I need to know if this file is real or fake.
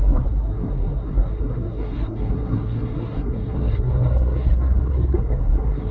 fake